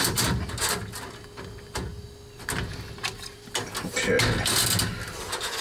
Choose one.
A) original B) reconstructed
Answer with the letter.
A